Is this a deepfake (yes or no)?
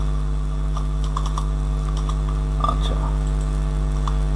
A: no